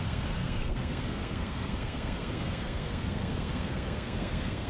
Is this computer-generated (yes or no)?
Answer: yes